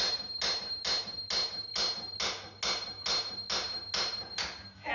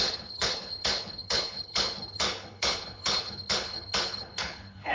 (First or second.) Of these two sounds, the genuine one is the first